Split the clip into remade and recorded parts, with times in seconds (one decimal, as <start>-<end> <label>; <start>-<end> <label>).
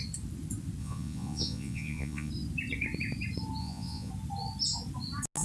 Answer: 0.0-0.8 recorded; 0.8-2.3 remade; 2.3-3.6 recorded; 3.6-4.1 remade; 4.1-5.4 recorded